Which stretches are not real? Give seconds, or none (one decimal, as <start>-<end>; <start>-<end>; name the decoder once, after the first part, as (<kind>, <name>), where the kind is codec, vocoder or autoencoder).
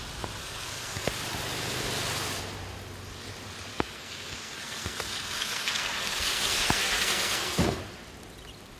0.4-1.1 (codec, SNAC); 3.7-7.8